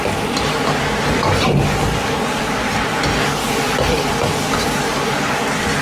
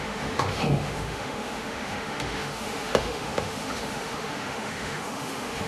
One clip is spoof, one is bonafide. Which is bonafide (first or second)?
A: first